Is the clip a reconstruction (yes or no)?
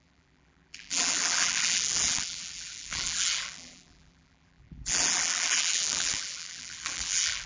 yes